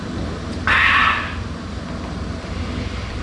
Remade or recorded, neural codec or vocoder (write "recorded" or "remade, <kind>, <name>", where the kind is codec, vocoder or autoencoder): recorded